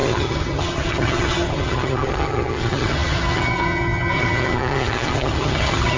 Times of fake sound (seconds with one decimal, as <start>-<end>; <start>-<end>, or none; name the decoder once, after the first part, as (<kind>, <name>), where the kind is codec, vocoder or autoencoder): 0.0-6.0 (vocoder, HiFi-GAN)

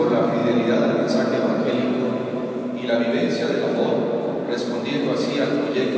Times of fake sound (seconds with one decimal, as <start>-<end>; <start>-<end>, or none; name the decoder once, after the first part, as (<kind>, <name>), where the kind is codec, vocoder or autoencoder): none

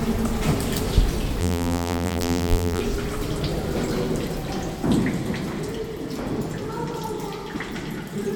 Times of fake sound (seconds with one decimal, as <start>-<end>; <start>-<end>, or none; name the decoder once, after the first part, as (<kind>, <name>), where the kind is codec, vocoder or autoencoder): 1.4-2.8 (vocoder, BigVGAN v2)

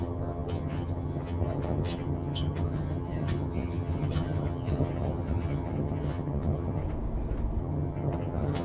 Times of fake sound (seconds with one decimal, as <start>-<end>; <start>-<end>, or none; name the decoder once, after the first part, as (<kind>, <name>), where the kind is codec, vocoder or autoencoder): 0.0-6.8 (vocoder, HiFi-GAN); 7.6-8.6

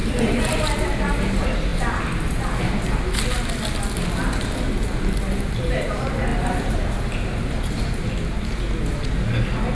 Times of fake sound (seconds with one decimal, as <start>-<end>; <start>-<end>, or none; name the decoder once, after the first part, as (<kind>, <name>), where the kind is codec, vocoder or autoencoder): 0.0-1.2 (vocoder, BigVGAN v2); 6.3-8.1

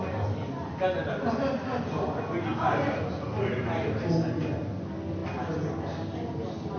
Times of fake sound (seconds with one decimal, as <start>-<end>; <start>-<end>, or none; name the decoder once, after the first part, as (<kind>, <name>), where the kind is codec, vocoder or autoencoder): none

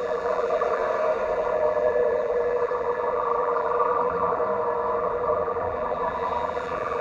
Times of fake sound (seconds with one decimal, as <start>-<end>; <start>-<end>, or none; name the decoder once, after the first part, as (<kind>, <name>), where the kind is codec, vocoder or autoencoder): 0.0-0.8 (vocoder, BigVGAN v2); 1.3-4.4; 5.0-7.0

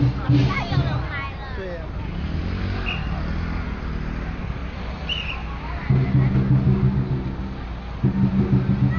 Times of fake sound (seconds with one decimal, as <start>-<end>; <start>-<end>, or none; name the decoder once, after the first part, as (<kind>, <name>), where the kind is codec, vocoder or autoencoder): none